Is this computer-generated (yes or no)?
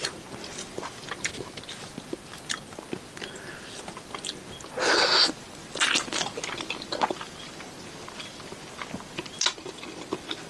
no